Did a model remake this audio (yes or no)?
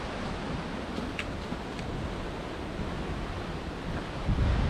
no